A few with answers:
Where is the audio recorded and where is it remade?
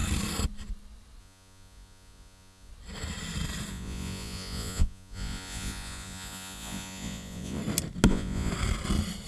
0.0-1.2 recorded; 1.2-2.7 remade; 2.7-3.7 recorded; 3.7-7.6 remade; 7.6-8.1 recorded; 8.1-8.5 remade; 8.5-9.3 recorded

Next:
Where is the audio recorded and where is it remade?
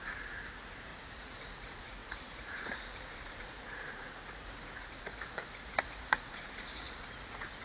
0.0-7.6 remade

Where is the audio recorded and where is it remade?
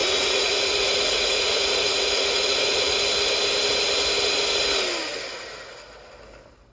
0.0-3.0 remade; 3.0-6.7 recorded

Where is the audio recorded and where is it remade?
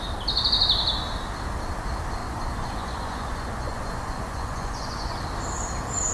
0.0-2.2 recorded; 2.2-5.2 remade; 5.2-6.1 recorded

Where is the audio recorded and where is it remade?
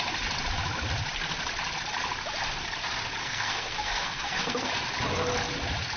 0.0-3.2 recorded; 3.2-4.7 remade; 4.7-6.0 recorded